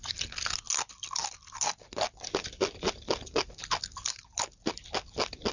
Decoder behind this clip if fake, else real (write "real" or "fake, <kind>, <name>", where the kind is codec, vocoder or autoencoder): real